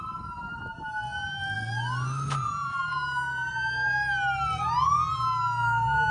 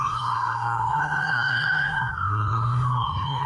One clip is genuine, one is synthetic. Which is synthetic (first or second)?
second